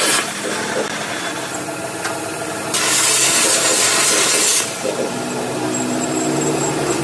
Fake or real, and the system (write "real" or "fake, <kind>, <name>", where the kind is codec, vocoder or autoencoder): real